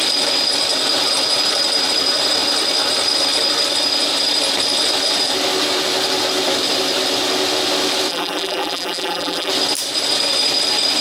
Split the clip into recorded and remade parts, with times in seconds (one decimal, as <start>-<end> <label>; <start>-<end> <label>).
0.0-8.1 recorded; 8.1-9.5 remade; 9.5-11.0 recorded